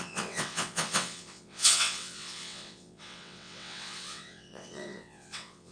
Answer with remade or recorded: remade